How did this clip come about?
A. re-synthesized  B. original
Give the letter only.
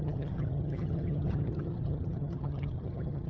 A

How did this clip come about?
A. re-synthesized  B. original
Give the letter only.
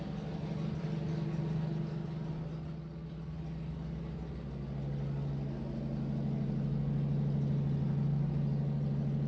B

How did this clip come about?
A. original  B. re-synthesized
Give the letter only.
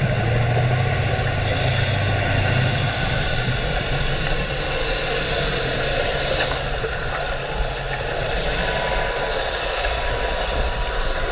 A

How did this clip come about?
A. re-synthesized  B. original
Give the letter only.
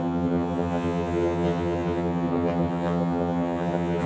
A